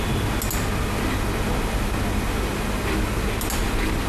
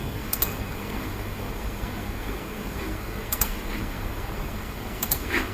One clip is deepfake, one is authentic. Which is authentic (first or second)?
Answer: first